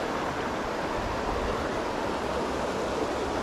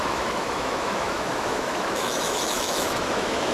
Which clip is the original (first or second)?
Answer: first